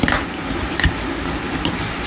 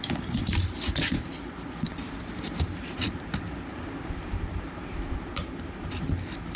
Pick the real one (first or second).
first